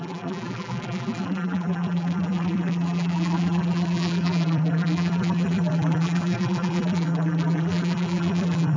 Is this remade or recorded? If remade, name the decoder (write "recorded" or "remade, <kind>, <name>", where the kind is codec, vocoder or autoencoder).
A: remade, vocoder, BigVGAN v2